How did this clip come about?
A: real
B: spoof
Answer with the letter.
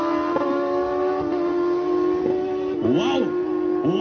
A